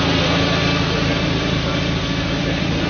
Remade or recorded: recorded